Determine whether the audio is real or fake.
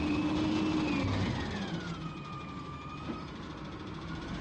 real